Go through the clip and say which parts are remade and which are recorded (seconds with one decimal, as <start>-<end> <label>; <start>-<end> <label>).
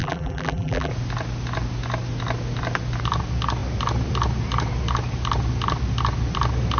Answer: 0.0-0.9 remade; 0.9-6.8 recorded